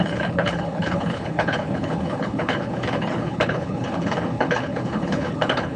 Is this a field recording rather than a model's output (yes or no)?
no